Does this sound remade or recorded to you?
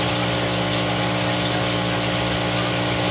recorded